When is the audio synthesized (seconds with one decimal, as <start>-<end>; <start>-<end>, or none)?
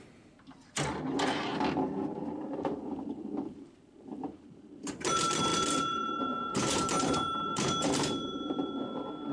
0.0-1.5; 2.1-5.5; 6.2-9.3